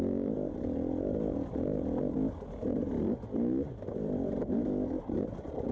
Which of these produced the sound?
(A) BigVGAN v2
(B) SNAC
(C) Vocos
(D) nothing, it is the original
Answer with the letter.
D